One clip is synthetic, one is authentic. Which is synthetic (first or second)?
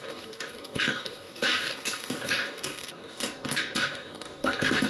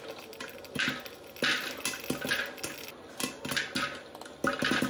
first